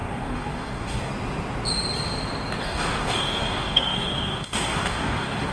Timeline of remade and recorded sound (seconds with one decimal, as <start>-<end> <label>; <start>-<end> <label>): 0.0-1.1 remade; 1.1-2.6 recorded; 2.6-5.5 remade